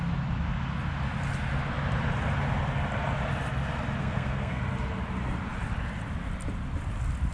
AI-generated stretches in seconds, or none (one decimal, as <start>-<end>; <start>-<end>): 4.0-4.6